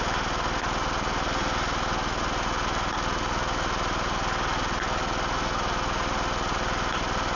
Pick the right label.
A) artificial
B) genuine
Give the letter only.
B